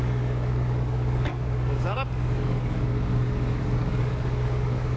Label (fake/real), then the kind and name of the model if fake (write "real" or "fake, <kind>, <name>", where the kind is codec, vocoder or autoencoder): fake, codec, DAC